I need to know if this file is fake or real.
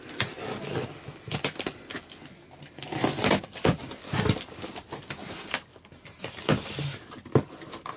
real